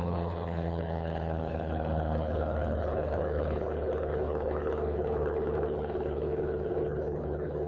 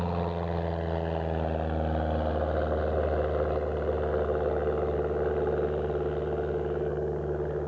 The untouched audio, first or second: second